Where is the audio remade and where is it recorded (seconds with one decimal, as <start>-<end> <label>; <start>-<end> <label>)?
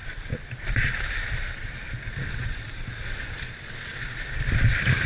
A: 0.0-2.3 remade; 2.3-3.9 recorded; 3.9-5.1 remade